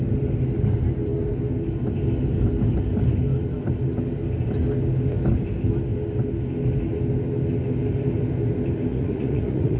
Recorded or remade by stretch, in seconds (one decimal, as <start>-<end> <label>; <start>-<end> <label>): 0.0-8.9 recorded; 8.9-9.8 remade